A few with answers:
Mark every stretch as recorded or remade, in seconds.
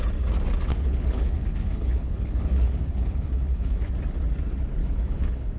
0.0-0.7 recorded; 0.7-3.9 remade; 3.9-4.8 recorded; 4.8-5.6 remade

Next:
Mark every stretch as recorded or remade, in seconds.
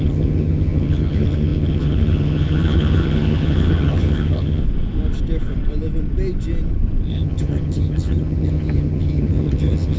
0.0-4.6 remade; 4.6-7.1 recorded; 7.1-10.0 remade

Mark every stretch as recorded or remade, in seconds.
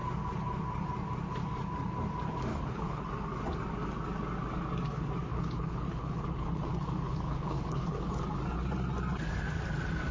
0.0-2.5 recorded; 2.5-3.1 remade; 3.1-5.3 recorded; 5.3-8.1 remade; 8.1-10.1 recorded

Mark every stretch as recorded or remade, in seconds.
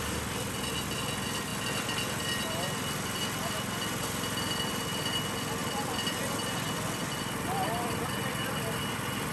0.0-5.6 recorded; 5.6-8.2 remade; 8.2-9.3 recorded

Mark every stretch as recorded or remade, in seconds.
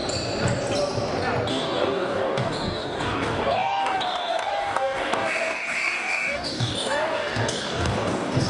0.0-1.5 recorded; 1.5-8.5 remade